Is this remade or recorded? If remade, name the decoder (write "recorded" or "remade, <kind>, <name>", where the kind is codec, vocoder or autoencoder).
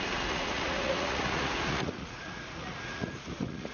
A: remade, vocoder, Vocos